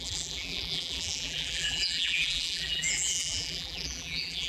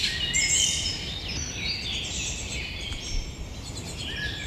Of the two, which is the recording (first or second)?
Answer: second